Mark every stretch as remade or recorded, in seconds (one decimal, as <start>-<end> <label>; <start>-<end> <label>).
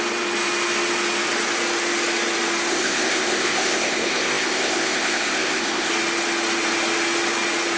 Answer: 0.0-2.7 recorded; 2.7-5.9 remade; 5.9-7.8 recorded